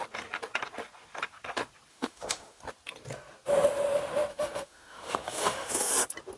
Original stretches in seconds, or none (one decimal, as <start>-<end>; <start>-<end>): 0.0-1.9; 2.6-4.3; 5.9-6.4